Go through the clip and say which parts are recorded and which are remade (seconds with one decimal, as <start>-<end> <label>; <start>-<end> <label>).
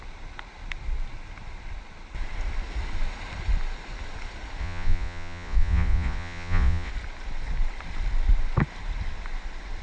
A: 0.0-4.6 recorded; 4.6-6.9 remade; 6.9-9.8 recorded